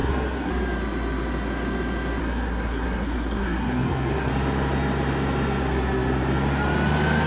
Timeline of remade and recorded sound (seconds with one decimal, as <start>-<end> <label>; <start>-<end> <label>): 0.0-0.5 remade; 0.5-2.2 recorded; 2.2-4.3 remade; 4.3-7.3 recorded